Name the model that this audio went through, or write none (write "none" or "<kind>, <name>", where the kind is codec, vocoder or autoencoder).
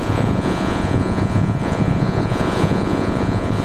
vocoder, Vocos